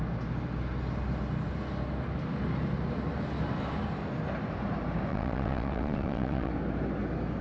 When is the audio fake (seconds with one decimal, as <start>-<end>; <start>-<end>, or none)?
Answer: 5.1-6.5